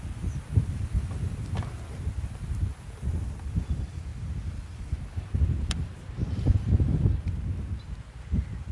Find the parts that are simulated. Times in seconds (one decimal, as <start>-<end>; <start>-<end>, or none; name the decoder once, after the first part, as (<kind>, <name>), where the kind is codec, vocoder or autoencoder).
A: none